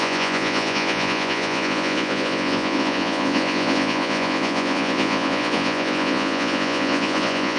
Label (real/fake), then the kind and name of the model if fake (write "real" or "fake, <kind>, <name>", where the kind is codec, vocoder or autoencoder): fake, vocoder, Vocos